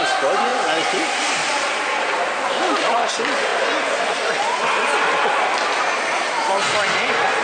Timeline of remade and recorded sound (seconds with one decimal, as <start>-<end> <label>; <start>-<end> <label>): 0.0-7.4 recorded